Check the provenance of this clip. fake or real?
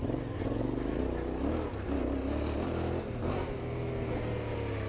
real